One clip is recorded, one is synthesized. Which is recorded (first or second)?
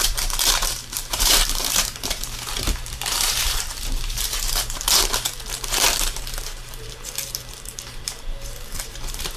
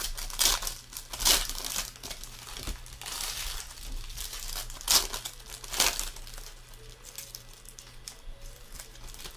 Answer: second